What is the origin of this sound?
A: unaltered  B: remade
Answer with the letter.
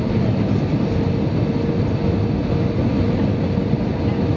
A